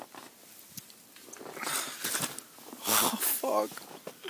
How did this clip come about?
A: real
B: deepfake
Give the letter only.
A